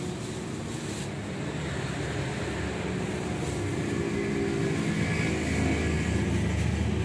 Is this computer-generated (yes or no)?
no